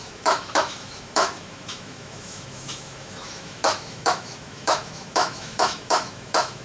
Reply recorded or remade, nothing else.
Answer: remade